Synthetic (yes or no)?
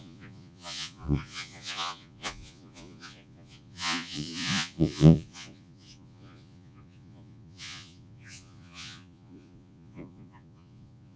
yes